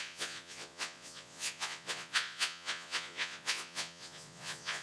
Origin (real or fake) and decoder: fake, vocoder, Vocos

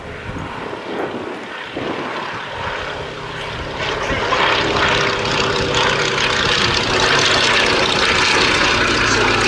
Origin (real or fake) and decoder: real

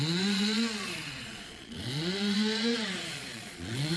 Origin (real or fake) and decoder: fake, vocoder, Vocos